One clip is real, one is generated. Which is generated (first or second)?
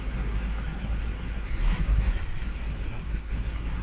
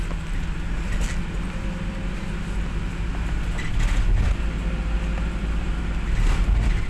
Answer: first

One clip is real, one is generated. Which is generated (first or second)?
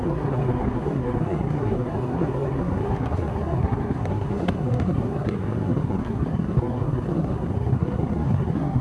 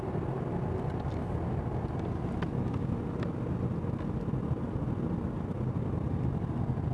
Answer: first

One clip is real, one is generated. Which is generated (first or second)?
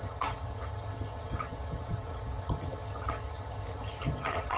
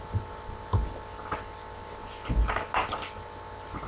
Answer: first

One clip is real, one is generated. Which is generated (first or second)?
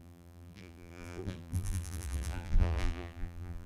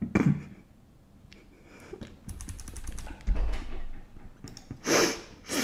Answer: first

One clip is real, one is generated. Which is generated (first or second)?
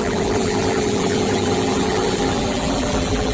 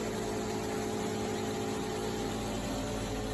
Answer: first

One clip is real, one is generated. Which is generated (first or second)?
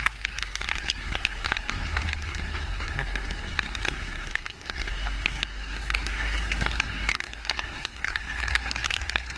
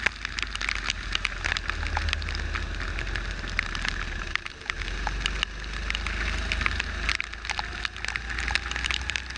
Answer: first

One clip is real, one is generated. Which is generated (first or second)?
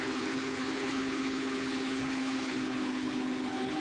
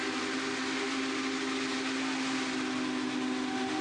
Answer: first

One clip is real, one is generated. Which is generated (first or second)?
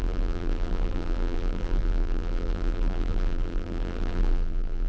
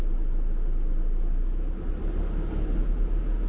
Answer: first